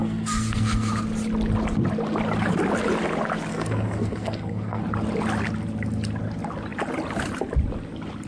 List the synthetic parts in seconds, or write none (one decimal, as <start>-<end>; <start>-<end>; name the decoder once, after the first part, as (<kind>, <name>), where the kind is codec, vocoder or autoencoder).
0.0-0.9 (codec, SNAC); 3.5-4.8